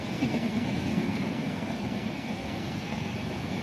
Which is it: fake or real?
fake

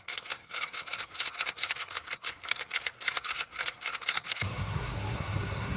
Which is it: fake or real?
fake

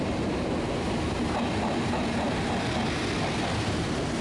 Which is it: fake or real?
real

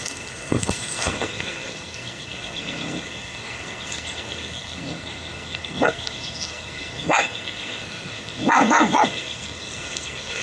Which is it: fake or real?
fake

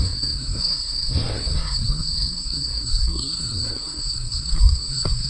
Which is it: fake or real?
fake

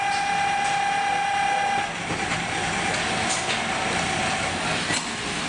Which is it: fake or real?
real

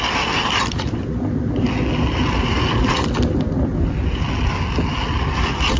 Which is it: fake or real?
real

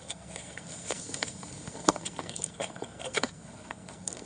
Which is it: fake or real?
fake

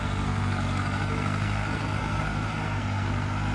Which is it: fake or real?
fake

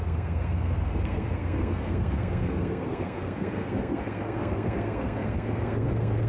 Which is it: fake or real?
fake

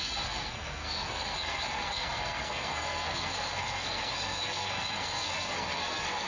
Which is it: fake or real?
fake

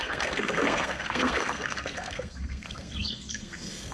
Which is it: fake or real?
fake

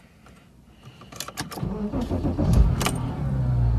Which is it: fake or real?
real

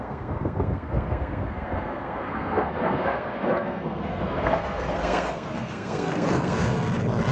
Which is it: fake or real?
fake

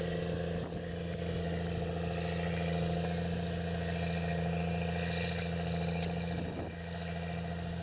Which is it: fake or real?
real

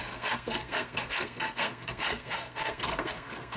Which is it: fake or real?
fake